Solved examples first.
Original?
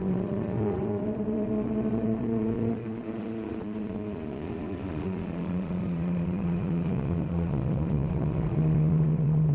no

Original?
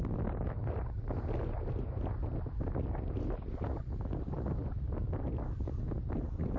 yes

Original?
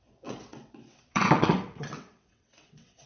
no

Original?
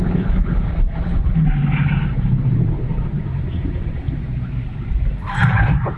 no